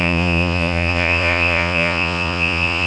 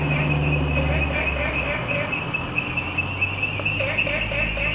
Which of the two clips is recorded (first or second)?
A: second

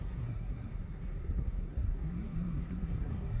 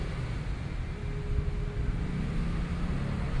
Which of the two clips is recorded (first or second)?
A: second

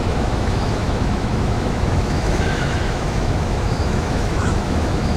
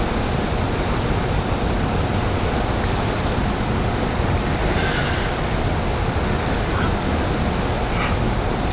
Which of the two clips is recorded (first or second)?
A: second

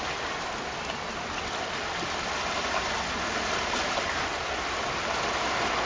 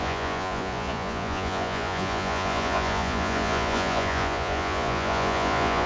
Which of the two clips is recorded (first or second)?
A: first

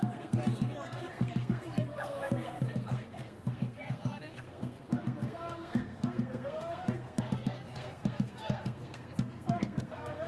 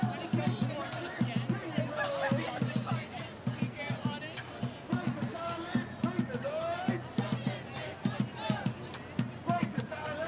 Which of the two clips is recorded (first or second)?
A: second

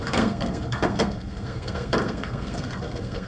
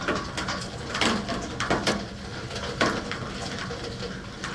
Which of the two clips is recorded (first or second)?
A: second